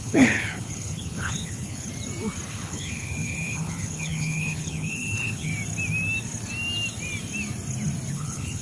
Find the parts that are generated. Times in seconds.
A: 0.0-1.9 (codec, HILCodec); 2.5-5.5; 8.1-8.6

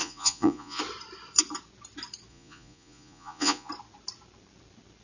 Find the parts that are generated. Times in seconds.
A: 0.0-0.8 (vocoder, Vocos); 2.3-3.7

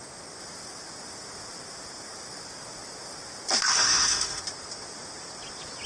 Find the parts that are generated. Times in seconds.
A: 3.7-4.4 (autoencoder, DAC-VAE)

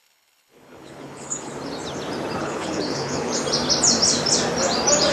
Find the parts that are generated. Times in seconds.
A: 0.0-1.5 (codec, HILCodec); 2.4-3.3

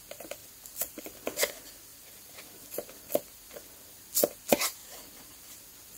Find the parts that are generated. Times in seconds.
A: 1.9-3.1 (vocoder, BigVGAN v2); 4.8-5.6

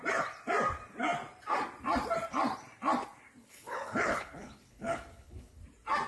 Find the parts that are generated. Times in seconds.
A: 3.4-5.6 (codec, HILCodec)

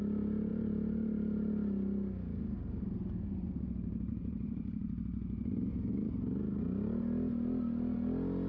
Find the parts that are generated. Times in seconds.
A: 0.5-1.5 (vocoder, BigVGAN v2); 4.1-5.0

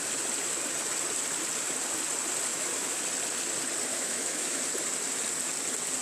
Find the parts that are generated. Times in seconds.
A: 2.5-3.0 (autoencoder, DAC-VAE); 3.9-4.6